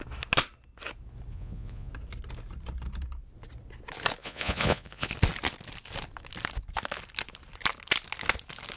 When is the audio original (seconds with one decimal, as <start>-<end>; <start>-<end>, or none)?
0.0-1.3; 1.9-4.2; 5.1-8.8